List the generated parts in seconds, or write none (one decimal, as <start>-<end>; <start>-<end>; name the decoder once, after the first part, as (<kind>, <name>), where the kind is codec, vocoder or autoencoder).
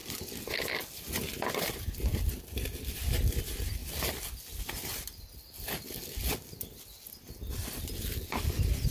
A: none